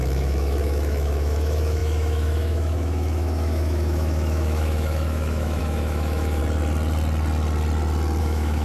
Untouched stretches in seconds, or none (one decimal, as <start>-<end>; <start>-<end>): 6.4-8.2